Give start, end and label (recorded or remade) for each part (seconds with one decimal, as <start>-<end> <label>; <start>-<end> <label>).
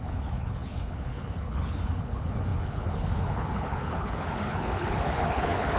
0.0-5.8 remade